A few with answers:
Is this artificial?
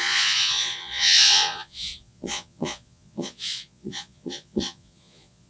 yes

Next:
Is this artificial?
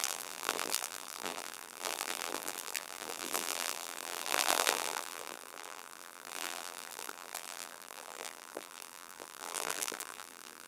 yes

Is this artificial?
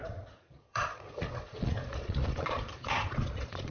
yes